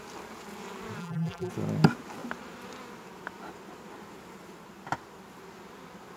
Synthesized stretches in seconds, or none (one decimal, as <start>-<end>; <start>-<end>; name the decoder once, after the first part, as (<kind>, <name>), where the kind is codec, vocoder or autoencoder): 1.0-1.5 (vocoder, BigVGAN v2)